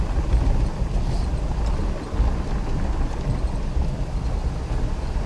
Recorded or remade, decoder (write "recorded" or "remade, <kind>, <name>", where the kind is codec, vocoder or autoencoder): recorded